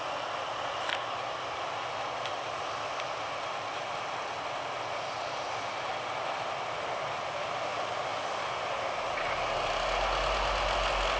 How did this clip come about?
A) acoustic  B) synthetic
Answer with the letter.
A